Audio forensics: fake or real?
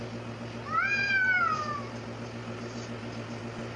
real